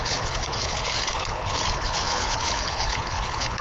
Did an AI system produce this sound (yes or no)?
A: yes